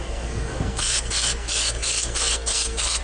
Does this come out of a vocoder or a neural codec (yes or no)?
yes